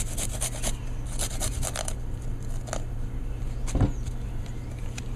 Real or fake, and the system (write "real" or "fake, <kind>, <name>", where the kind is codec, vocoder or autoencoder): real